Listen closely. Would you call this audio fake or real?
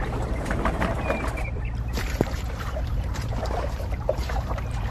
fake